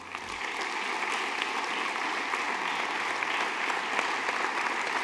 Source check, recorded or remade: recorded